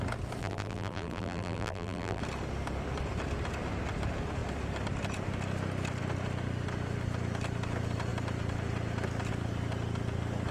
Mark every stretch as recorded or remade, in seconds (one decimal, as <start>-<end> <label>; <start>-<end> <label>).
0.0-0.4 recorded; 0.4-2.2 remade; 2.2-10.5 recorded